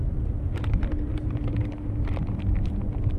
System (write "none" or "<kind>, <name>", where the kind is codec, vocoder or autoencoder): vocoder, BigVGAN v2